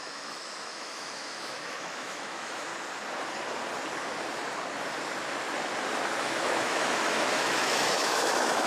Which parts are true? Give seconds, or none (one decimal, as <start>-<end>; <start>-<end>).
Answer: 2.7-6.2